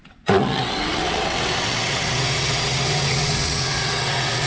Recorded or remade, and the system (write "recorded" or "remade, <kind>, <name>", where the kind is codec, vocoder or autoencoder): remade, vocoder, WaveNeXt